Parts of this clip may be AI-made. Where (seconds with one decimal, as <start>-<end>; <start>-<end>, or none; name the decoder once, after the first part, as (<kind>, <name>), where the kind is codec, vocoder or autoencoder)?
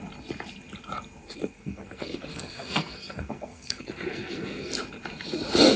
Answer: 1.2-4.7 (codec, SNAC)